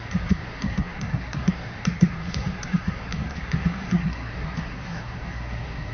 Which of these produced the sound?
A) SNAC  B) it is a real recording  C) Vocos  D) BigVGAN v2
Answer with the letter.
A